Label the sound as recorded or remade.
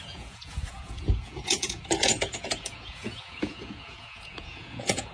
remade